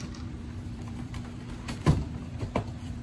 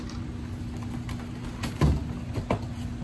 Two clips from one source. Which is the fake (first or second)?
first